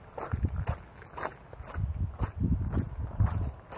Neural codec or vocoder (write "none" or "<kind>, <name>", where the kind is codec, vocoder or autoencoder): none